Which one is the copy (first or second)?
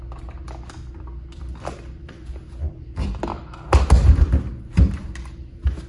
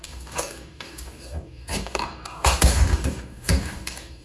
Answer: second